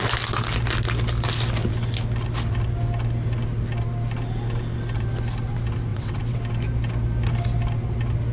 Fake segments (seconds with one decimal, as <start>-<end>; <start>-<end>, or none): 5.9-6.4